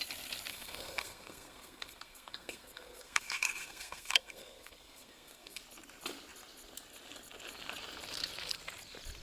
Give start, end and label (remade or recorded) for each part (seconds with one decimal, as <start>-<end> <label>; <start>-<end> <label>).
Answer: 0.0-0.5 recorded; 0.5-5.6 remade; 5.6-9.2 recorded

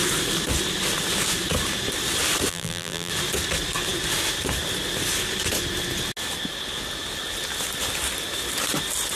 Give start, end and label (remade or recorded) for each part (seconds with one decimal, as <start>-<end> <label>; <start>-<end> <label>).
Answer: 0.0-2.5 recorded; 2.5-3.1 remade; 3.1-9.1 recorded